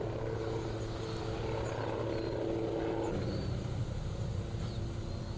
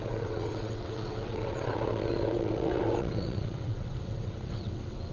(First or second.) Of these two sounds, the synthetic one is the second